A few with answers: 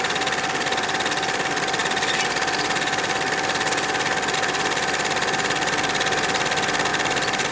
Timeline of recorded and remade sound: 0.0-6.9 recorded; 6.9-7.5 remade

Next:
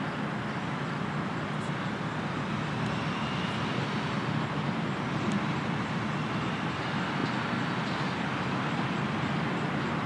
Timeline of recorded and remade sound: 0.0-10.1 recorded